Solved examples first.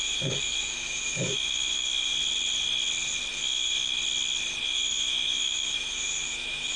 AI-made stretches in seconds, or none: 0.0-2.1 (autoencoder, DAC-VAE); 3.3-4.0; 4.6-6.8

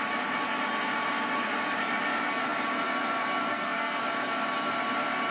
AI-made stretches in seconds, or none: 3.5-4.0 (codec, SNAC)

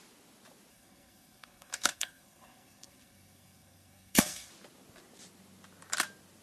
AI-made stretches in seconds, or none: 0.7-4.5 (codec, SNAC)

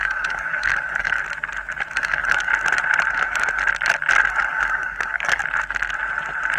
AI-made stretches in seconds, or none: 0.0-1.2 (codec, DAC); 1.9-2.5; 3.1-3.6; 4.3-5.4

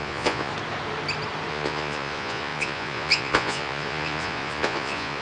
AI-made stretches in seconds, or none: 0.0-0.5 (vocoder, Vocos); 1.5-5.2

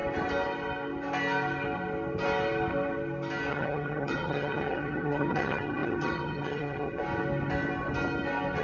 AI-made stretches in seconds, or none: 3.5-7.0 (vocoder, HiFi-GAN)

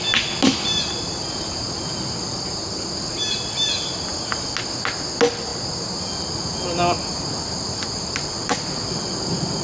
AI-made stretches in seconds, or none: none